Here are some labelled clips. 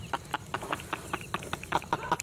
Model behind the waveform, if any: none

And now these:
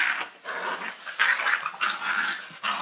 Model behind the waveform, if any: none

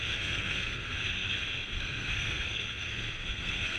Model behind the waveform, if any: codec, SNAC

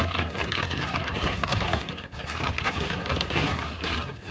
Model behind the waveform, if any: codec, SNAC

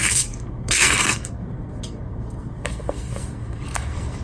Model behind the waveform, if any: codec, SNAC